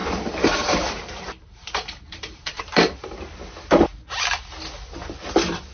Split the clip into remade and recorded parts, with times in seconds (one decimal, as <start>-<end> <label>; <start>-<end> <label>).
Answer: 0.0-2.6 remade; 2.6-5.7 recorded